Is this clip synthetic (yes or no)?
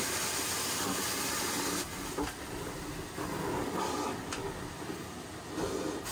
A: no